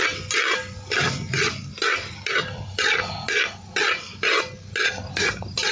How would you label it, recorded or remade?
recorded